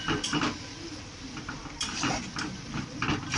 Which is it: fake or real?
fake